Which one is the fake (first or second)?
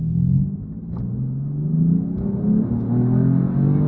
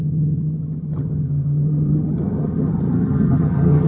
second